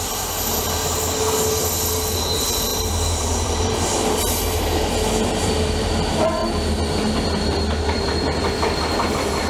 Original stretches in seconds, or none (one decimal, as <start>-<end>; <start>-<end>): 6.4-9.1